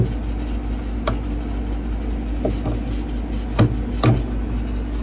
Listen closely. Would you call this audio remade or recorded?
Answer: recorded